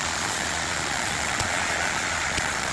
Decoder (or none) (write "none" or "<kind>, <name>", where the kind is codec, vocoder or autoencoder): vocoder, Vocos